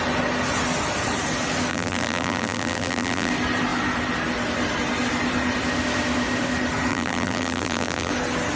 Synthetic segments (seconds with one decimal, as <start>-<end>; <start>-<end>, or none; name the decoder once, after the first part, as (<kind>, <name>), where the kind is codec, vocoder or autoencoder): 1.7-3.3 (vocoder, BigVGAN v2); 6.9-8.1